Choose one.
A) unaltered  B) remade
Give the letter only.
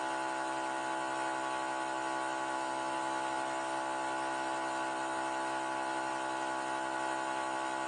A